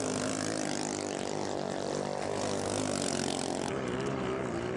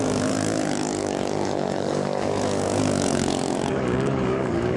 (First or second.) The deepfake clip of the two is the second